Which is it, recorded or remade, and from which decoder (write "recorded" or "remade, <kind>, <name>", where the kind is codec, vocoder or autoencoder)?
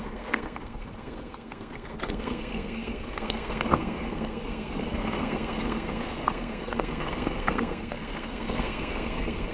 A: remade, codec, SNAC